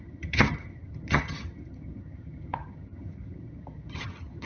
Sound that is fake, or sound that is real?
fake